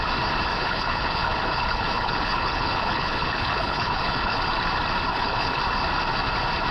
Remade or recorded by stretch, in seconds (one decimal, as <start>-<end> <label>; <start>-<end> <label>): 0.0-0.5 recorded; 0.5-4.4 remade; 4.4-5.1 recorded; 5.1-5.6 remade; 5.6-6.7 recorded